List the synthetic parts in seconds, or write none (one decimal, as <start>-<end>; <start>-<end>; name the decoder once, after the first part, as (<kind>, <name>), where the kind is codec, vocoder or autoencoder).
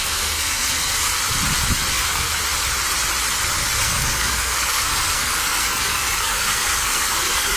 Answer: 0.0-1.1 (codec, SNAC); 1.9-2.3; 3.8-7.6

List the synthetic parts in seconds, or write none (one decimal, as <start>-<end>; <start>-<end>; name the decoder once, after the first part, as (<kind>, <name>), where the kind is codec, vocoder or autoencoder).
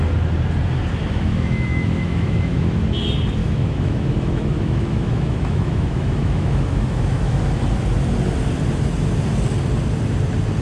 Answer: 1.0-2.8 (autoencoder, DAC-VAE); 3.4-7.4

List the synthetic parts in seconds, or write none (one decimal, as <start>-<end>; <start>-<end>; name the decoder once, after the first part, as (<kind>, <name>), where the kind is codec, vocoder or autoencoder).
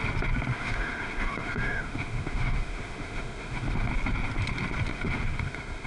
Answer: 0.5-3.9 (autoencoder, DAC-VAE); 4.9-5.9